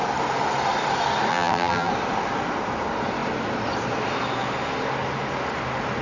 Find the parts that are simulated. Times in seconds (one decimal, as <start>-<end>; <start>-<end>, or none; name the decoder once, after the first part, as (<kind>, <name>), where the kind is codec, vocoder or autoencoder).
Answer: 1.3-1.9 (vocoder, BigVGAN v2)